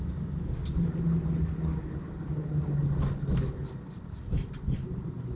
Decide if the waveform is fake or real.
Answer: real